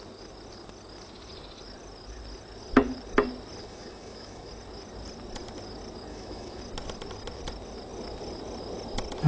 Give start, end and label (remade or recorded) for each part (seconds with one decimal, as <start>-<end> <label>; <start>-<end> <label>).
0.0-3.6 recorded; 3.6-4.5 remade; 4.5-6.1 recorded; 6.1-6.6 remade; 6.6-9.3 recorded